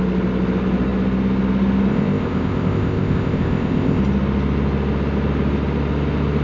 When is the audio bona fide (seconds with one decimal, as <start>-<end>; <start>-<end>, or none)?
0.0-1.9; 4.0-6.4